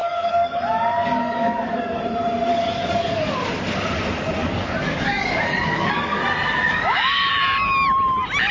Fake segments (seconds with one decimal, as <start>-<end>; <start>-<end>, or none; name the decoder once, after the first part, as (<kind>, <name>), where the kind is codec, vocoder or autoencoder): 0.0-2.0 (codec, DAC); 2.5-3.3; 4.4-6.2; 6.7-7.3